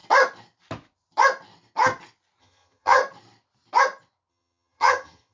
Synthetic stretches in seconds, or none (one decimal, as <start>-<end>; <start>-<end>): 2.4-3.0; 4.3-5.3